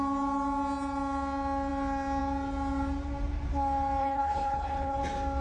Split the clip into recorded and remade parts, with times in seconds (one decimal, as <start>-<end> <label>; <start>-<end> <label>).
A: 0.0-4.0 recorded; 4.0-5.0 remade; 5.0-5.4 recorded